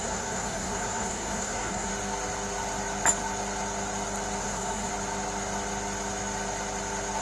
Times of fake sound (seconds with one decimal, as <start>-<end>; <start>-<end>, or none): 0.0-1.9; 4.4-4.9